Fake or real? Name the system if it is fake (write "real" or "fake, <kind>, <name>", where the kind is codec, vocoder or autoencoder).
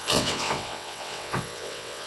fake, vocoder, WaveNeXt